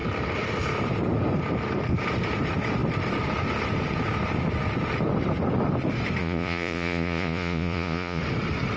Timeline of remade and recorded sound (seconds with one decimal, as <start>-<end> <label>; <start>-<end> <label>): 0.0-6.2 recorded; 6.2-8.2 remade; 8.2-8.8 recorded